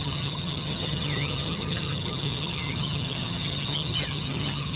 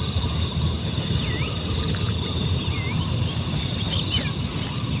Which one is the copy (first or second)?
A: first